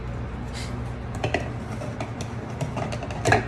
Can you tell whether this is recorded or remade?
recorded